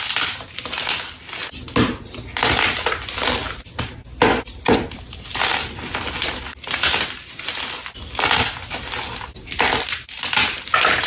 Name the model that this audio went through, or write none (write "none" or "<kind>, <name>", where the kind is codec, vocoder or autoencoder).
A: none